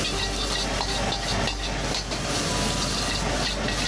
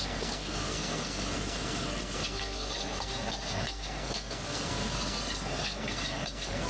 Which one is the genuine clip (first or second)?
first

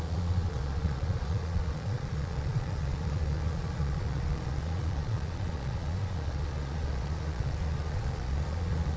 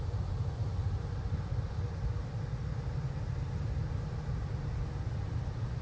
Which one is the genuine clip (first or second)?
second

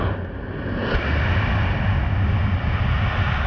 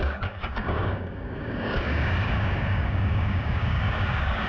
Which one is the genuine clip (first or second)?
first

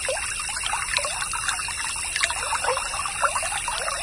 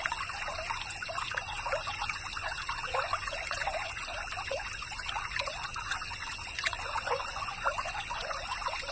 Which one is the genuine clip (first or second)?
first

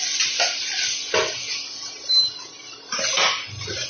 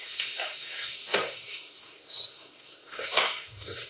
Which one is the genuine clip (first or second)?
first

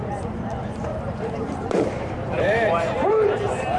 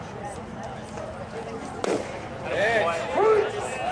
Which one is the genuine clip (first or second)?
second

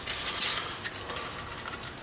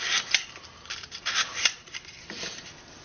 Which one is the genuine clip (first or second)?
first